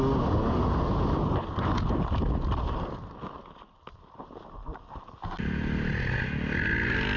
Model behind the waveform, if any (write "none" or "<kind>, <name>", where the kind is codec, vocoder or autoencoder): none